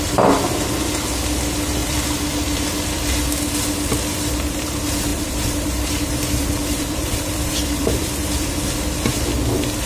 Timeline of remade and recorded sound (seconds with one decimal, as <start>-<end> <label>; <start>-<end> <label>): 0.0-1.8 recorded; 1.8-3.0 remade; 3.0-5.1 recorded; 5.1-8.5 remade; 8.5-9.9 recorded